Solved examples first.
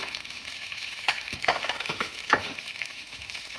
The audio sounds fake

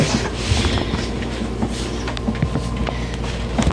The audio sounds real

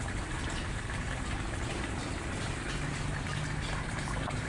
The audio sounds fake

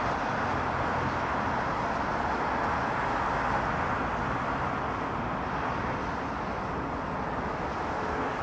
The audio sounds real